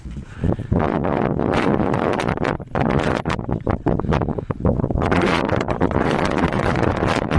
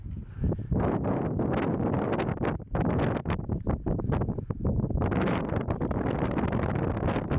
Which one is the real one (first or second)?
second